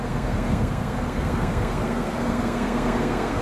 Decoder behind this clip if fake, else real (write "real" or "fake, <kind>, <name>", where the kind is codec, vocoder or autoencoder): fake, codec, SNAC